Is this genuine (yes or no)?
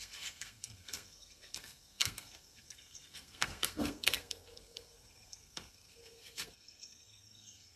no